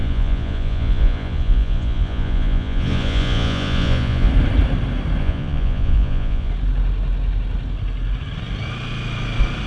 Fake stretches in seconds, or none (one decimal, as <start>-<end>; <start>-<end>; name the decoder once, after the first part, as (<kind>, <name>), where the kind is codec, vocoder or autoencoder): 0.0-4.3 (vocoder, Vocos); 5.2-6.5